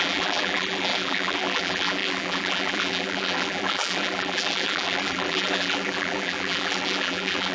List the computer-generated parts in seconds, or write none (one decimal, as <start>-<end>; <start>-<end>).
0.0-7.5